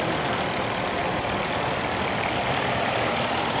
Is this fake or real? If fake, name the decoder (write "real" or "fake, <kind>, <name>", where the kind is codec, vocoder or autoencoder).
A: real